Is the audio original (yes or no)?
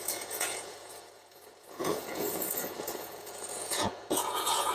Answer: no